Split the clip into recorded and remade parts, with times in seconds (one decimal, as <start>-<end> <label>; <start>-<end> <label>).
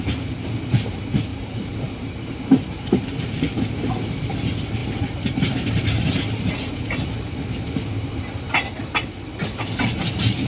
0.0-1.3 recorded; 1.3-3.9 remade; 3.9-4.8 recorded; 4.8-6.5 remade; 6.5-10.5 recorded